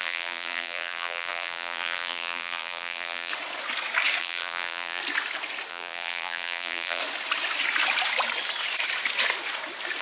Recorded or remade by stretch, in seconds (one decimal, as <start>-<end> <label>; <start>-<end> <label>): 0.0-3.3 remade; 3.3-4.2 recorded; 4.2-5.0 remade; 5.0-5.7 recorded; 5.7-7.0 remade; 7.0-10.0 recorded